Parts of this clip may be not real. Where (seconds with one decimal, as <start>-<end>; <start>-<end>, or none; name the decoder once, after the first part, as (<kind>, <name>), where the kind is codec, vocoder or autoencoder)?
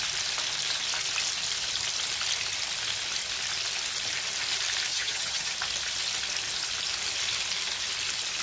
4.9-5.5 (vocoder, HiFi-GAN)